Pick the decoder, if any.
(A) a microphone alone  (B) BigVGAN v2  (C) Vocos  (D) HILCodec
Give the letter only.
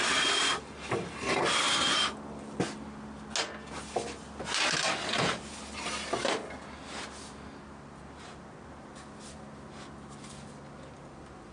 A